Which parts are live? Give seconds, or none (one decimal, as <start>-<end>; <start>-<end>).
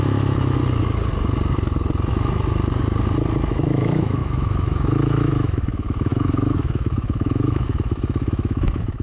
0.6-3.5